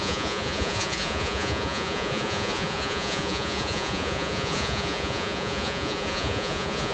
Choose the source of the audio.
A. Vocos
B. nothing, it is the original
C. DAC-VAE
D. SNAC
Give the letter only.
A